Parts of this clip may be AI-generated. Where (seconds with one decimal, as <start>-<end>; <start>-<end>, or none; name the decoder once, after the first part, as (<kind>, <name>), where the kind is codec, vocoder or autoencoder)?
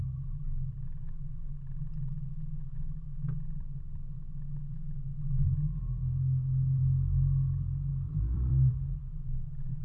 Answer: 7.9-8.7 (vocoder, BigVGAN v2)